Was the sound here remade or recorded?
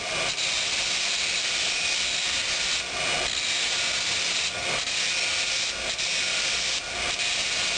recorded